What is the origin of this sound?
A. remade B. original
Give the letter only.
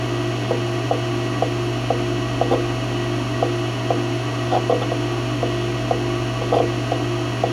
B